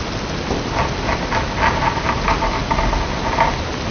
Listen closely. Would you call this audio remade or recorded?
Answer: recorded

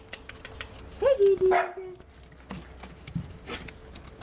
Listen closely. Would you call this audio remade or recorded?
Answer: recorded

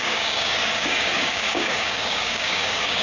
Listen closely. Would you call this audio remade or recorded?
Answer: remade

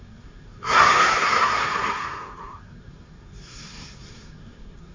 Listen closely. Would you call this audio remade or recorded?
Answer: remade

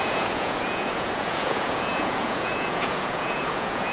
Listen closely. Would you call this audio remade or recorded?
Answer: remade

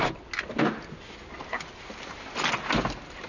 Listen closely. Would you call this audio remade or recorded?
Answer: recorded